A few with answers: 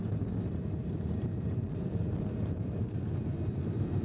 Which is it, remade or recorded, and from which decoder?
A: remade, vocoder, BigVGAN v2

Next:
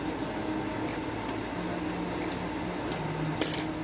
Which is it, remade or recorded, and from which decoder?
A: recorded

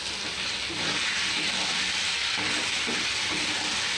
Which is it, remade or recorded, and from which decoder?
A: recorded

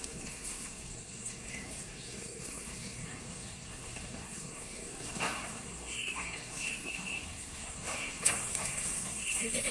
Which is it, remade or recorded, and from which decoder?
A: remade, codec, SNAC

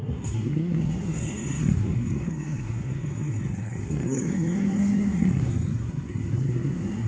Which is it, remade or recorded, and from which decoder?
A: remade, codec, SNAC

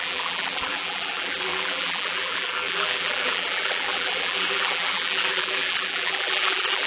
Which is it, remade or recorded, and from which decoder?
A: remade, vocoder, BigVGAN v2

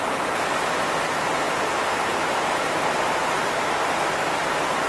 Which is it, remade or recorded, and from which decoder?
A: recorded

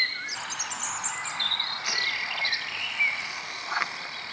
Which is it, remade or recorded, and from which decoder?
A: recorded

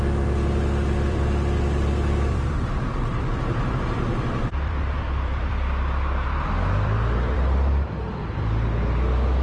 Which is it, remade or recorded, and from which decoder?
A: remade, vocoder, BigVGAN v2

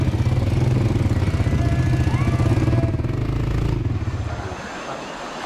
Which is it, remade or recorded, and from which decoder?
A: recorded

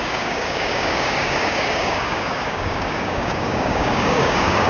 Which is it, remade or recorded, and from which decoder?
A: remade, codec, DAC